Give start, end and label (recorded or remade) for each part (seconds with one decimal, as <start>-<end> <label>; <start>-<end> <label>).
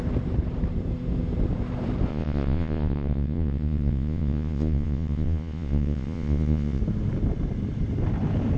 0.0-2.1 recorded; 2.1-6.8 remade; 6.8-8.6 recorded